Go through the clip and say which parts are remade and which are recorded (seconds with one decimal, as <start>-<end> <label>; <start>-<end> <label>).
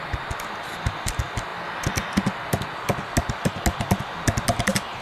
0.0-5.0 recorded